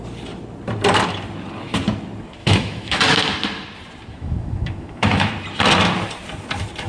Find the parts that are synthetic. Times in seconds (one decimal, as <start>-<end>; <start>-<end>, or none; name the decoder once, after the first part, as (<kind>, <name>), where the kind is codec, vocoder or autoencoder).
2.4-3.0 (autoencoder, DAC-VAE); 4.1-5.3